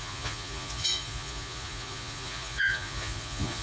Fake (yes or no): yes